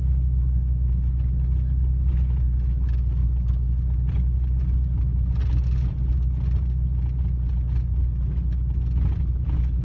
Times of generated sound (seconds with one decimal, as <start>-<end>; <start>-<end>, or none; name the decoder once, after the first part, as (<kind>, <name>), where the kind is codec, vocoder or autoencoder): none